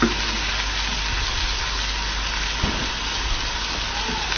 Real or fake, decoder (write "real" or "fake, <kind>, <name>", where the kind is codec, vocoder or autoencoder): real